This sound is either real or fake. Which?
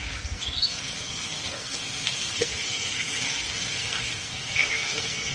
fake